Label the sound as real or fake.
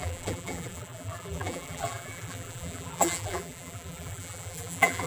fake